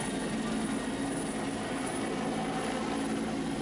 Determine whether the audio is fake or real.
real